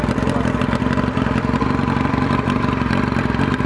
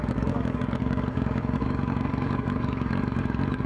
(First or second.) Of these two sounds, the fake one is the second